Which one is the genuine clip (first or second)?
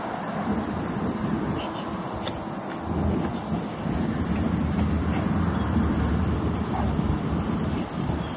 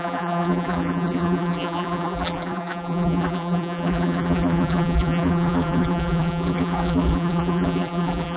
first